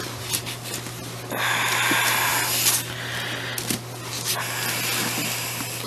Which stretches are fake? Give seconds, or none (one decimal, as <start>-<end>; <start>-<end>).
none